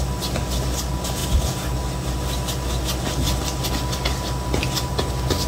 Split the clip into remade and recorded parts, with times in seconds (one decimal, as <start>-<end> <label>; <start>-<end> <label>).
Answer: 0.0-5.5 recorded

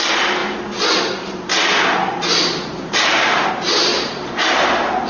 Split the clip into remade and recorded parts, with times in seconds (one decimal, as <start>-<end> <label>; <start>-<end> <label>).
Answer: 0.0-0.4 recorded; 0.4-3.5 remade; 3.5-3.9 recorded; 3.9-4.5 remade; 4.5-5.1 recorded

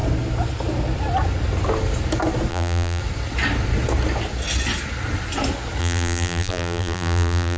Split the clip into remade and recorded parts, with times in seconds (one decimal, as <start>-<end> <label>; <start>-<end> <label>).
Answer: 0.0-2.5 recorded; 2.5-3.0 remade; 3.0-5.8 recorded; 5.8-7.6 remade

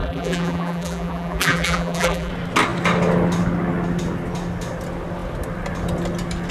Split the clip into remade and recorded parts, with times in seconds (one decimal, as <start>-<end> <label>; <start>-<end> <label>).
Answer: 0.0-2.3 remade; 2.3-6.5 recorded